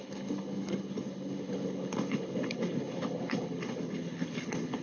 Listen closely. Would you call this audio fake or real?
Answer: fake